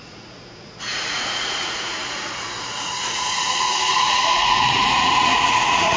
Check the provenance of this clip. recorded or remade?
remade